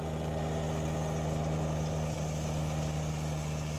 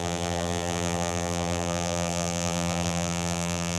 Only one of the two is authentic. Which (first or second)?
first